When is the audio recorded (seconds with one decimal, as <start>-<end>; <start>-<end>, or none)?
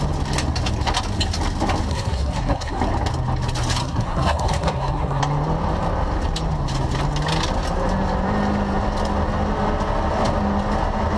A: 0.0-1.9; 2.8-3.8; 5.2-11.2